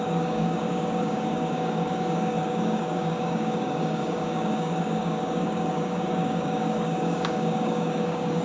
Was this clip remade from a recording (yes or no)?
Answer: yes